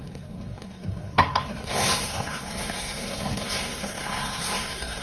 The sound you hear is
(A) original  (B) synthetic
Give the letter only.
B